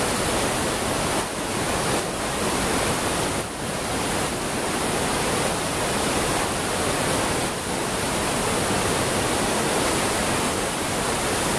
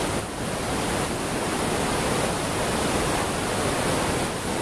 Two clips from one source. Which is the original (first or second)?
first